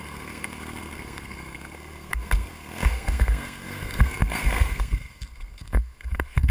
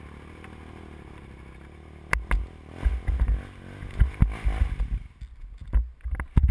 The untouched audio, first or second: second